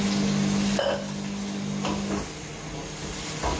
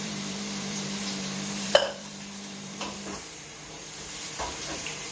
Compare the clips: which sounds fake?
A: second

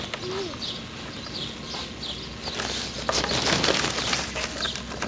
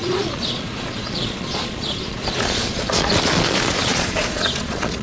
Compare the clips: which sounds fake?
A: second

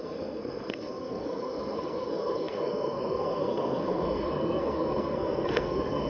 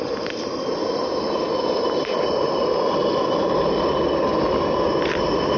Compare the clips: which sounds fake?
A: first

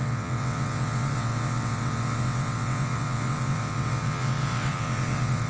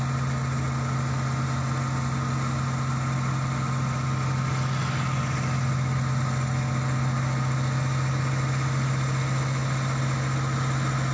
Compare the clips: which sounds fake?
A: first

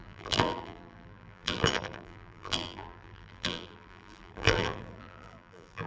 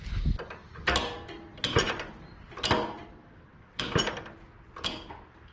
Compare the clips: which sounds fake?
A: first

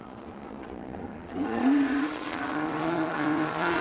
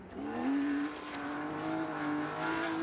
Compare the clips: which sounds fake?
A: first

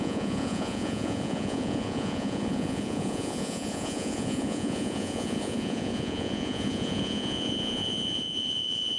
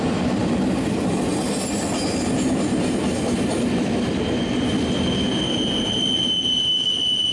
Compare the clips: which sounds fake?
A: first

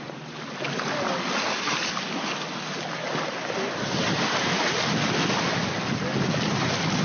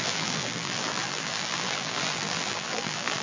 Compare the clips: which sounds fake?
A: second